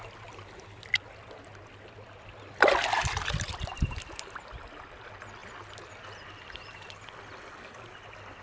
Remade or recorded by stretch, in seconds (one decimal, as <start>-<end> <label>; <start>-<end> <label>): 0.0-8.4 recorded